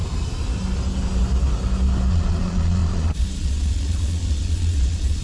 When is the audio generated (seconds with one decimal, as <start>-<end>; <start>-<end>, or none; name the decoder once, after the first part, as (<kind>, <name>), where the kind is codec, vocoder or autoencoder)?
2.1-5.2 (vocoder, Vocos)